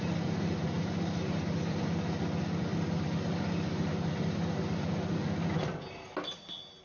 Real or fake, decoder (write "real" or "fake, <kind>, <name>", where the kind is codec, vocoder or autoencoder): real